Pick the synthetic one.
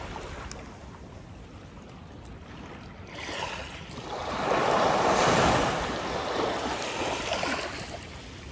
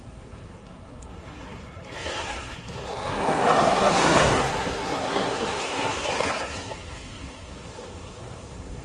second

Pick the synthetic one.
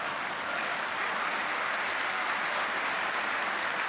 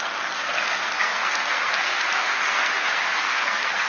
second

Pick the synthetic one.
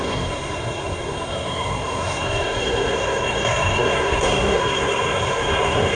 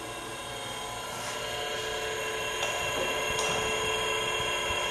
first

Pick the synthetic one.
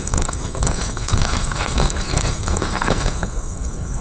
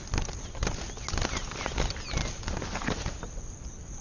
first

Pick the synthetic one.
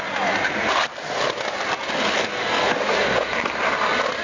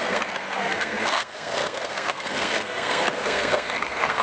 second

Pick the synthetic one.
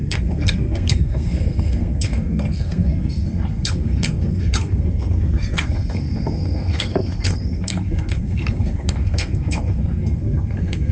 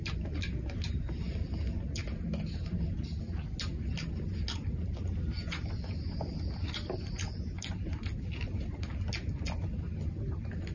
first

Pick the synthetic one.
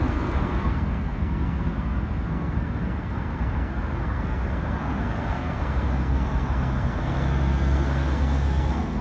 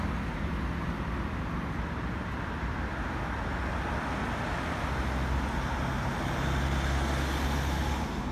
first